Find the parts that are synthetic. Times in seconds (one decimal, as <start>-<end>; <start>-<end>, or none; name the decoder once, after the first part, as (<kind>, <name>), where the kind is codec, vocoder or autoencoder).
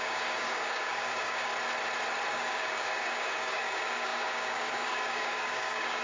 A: 0.0-1.5 (codec, DAC); 2.3-6.0